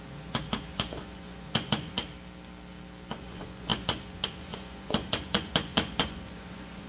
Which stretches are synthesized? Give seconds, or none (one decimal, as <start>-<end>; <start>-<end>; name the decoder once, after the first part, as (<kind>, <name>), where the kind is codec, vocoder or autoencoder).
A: 0.0-2.0 (vocoder, Vocos); 3.1-6.9